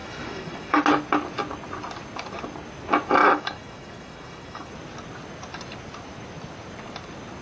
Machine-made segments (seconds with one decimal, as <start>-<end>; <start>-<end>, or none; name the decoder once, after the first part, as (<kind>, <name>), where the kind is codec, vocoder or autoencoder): 0.0-0.8 (autoencoder, DAC-VAE); 3.2-4.7